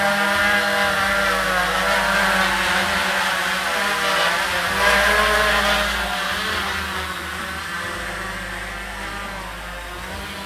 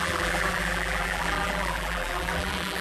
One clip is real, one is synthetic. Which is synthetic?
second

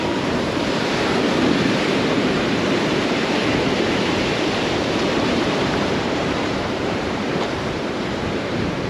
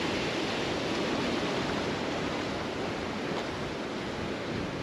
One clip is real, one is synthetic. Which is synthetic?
first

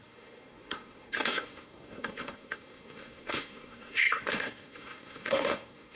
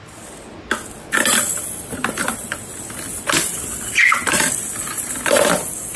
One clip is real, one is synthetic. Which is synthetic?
first